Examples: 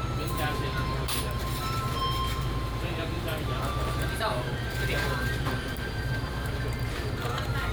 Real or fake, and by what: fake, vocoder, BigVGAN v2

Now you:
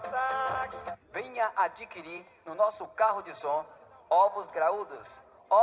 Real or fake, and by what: fake, vocoder, BigVGAN v2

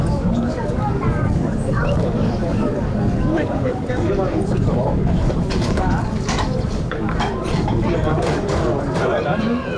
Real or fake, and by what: fake, codec, DAC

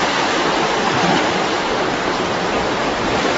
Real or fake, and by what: real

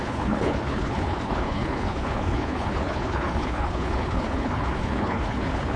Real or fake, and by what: fake, codec, HILCodec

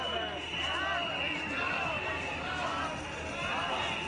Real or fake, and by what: real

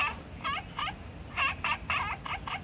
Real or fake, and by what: real